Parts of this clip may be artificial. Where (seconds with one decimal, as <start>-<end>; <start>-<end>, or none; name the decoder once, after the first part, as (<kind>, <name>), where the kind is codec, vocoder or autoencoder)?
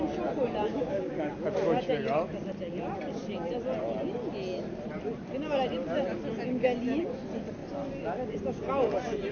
0.7-1.3 (codec, DAC)